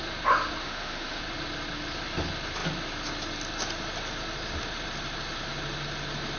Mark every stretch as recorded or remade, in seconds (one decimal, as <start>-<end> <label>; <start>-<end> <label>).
0.0-0.6 recorded; 0.6-1.2 remade; 1.2-6.4 recorded